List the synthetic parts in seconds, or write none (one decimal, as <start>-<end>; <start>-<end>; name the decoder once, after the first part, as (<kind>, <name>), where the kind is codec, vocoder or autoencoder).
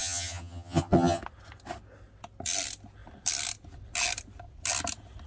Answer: 0.0-1.2 (vocoder, HiFi-GAN)